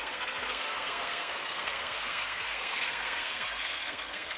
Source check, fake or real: fake